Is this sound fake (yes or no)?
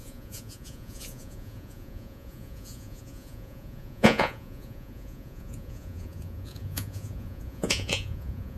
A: yes